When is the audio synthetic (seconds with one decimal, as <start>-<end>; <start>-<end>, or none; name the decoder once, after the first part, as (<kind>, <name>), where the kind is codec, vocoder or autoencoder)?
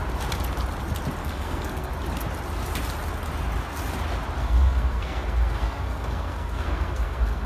1.2-1.9 (codec, SNAC); 4.4-7.5